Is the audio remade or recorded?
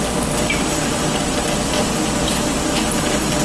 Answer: recorded